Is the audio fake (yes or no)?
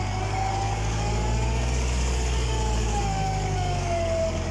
yes